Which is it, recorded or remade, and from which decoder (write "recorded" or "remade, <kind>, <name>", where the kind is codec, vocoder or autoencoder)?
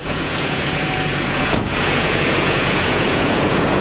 remade, vocoder, Vocos